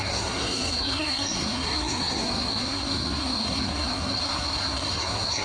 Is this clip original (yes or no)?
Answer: no